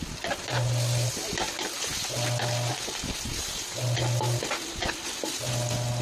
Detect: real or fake real